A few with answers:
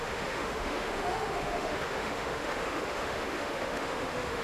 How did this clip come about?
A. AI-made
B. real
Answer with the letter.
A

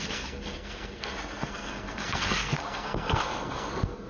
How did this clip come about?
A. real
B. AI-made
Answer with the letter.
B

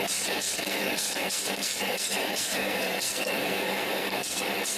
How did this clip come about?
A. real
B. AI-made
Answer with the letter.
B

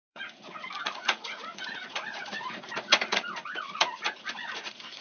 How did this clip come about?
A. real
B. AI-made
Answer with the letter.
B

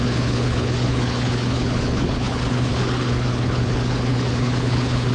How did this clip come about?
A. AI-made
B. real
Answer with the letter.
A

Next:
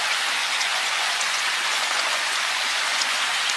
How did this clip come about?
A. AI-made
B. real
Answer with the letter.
A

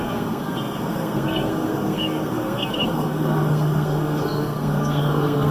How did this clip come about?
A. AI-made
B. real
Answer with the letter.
A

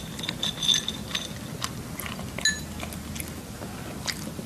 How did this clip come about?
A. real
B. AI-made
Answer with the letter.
A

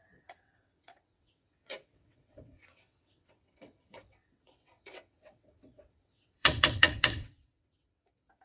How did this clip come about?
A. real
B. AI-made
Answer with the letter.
B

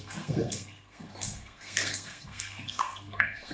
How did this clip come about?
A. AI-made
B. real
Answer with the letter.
A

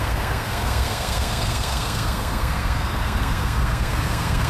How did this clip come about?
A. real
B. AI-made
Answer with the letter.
B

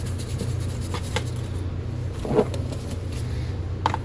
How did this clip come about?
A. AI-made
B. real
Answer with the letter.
B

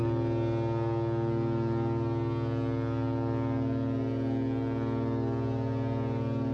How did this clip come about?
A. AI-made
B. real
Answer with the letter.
B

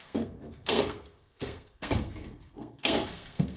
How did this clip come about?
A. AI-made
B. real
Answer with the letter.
A